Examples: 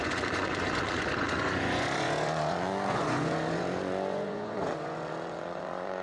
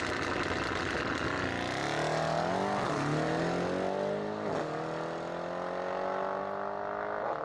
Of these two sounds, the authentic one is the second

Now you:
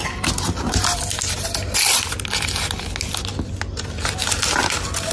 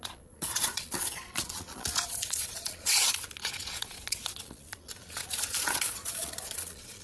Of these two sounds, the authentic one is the first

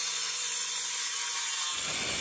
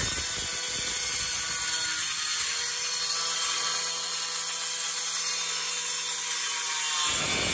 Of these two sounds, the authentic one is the second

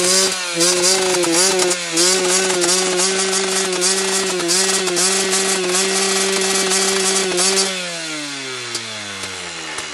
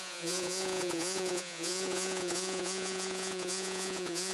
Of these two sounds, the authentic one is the first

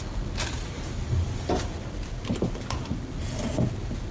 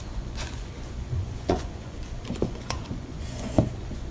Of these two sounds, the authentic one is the first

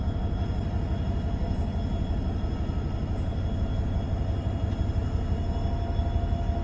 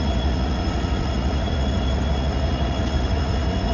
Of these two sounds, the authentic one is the first